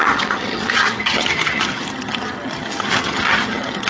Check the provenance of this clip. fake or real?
fake